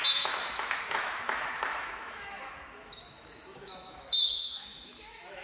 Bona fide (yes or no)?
no